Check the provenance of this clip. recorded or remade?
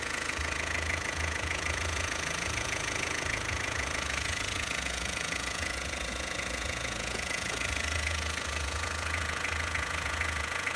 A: remade